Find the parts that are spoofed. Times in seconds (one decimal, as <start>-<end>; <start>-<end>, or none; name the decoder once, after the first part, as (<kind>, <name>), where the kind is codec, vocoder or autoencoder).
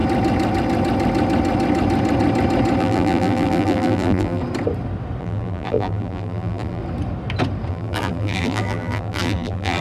2.8-4.4 (vocoder, BigVGAN v2); 5.2-6.8; 7.7-9.8